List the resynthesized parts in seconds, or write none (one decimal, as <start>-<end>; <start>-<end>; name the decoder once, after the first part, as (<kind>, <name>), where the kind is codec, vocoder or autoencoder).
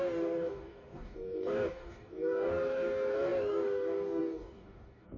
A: 0.0-5.2 (codec, DAC)